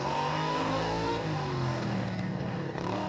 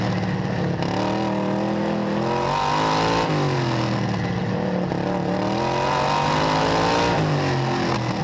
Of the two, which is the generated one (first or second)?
first